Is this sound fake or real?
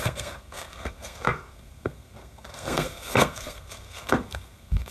fake